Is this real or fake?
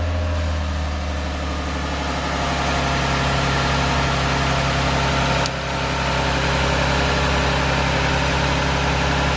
real